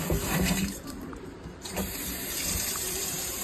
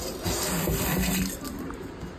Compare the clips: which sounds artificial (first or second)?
first